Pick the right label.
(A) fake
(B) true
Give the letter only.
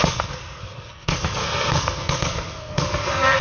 A